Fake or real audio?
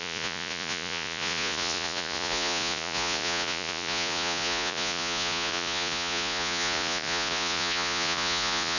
fake